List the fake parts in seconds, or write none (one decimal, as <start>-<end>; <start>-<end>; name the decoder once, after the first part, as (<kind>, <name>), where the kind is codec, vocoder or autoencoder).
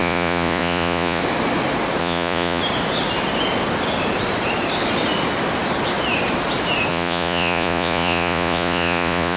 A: 0.0-1.2 (vocoder, Vocos); 2.0-2.6; 6.9-9.4